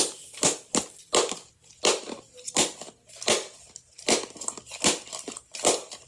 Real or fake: real